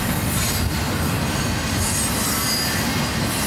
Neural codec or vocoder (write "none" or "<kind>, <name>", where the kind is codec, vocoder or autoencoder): none